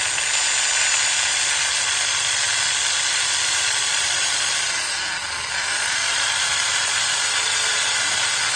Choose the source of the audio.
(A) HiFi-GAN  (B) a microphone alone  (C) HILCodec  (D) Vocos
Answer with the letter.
B